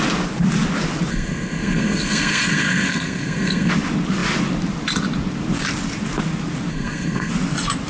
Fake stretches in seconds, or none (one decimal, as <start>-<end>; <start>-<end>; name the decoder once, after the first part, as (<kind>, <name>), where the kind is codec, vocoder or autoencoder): 1.1-3.7 (codec, SNAC); 6.7-7.3